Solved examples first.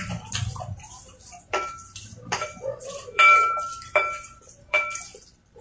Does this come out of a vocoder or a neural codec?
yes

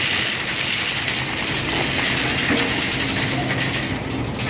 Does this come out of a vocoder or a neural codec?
no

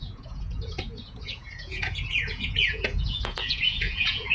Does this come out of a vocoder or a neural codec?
yes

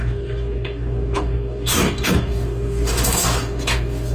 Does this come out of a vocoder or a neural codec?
yes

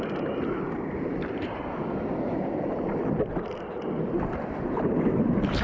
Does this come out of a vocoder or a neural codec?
yes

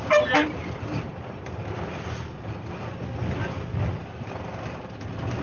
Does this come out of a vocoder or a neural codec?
no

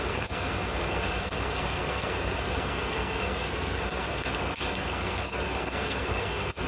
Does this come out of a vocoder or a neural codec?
yes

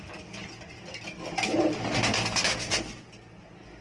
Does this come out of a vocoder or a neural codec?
no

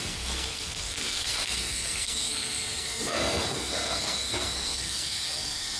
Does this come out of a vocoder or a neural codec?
yes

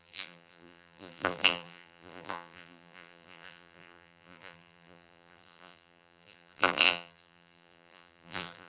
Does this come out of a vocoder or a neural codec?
yes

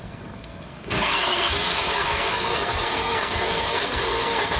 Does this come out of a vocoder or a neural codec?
yes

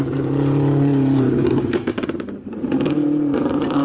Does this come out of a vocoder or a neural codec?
yes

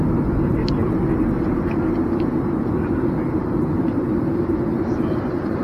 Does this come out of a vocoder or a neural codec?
no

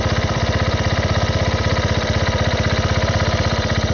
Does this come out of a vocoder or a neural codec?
yes